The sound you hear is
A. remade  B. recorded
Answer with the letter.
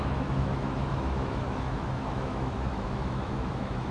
A